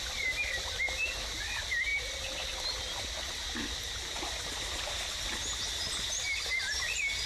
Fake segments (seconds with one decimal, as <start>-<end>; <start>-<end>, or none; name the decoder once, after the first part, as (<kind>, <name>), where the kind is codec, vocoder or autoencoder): none